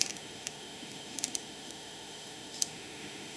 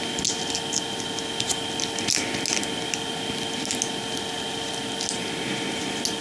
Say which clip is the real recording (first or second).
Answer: second